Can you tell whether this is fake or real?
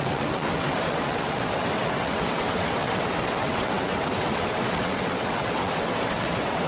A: fake